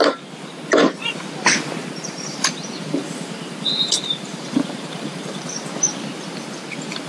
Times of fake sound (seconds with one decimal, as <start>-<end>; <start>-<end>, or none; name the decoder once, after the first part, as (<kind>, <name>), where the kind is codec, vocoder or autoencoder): 1.8-5.4 (vocoder, BigVGAN v2)